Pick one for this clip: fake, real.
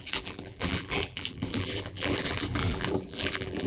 fake